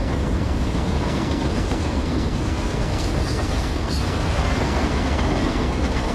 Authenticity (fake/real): fake